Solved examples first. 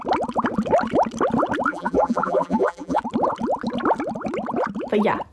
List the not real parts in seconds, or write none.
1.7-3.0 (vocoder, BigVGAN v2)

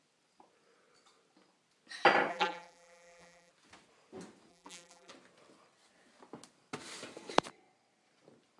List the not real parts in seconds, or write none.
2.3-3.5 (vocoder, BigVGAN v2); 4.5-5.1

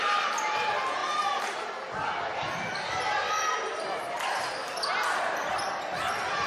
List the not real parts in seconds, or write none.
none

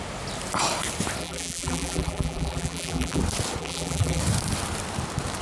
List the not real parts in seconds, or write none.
1.2-3.2 (vocoder, BigVGAN v2); 3.6-4.2